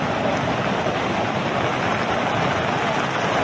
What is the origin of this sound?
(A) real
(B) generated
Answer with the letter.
A